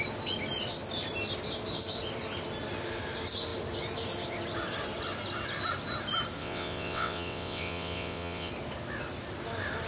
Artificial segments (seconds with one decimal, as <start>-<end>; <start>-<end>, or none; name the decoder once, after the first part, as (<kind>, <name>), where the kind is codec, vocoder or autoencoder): 6.4-8.5 (vocoder, WaveNeXt)